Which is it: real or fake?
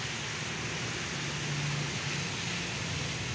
real